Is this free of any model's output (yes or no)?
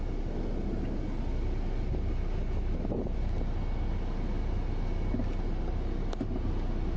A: yes